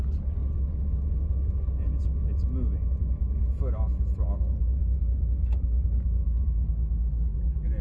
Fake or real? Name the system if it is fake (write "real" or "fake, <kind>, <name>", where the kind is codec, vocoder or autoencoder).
real